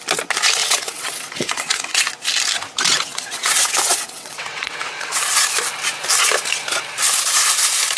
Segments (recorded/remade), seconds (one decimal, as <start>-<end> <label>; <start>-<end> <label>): 0.0-0.6 recorded; 0.6-2.0 remade; 2.0-3.1 recorded; 3.1-5.2 remade; 5.2-8.0 recorded

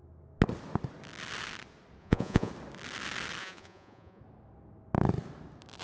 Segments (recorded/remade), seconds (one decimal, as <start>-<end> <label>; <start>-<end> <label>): 0.0-2.0 recorded; 2.0-2.5 remade; 2.5-3.4 recorded; 3.4-4.2 remade; 4.2-5.8 recorded

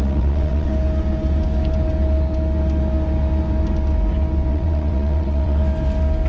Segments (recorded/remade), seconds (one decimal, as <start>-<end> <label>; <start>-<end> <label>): 0.0-0.7 remade; 0.7-4.5 recorded; 4.5-5.6 remade; 5.6-6.3 recorded